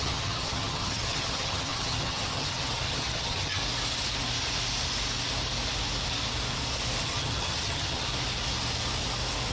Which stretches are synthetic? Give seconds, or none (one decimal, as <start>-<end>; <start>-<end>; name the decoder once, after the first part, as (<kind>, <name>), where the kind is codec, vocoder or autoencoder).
0.0-3.6 (vocoder, HiFi-GAN); 7.0-8.1